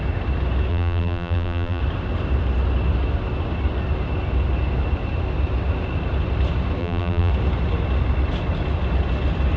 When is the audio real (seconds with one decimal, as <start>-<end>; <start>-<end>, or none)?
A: 0.0-0.7; 1.8-6.8; 7.3-9.6